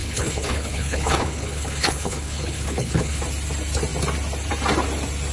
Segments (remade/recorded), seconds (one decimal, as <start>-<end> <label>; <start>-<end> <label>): 0.0-3.2 remade; 3.2-5.3 recorded